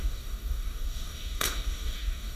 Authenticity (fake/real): fake